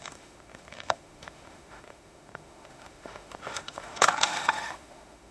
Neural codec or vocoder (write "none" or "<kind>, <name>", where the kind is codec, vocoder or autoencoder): autoencoder, DAC-VAE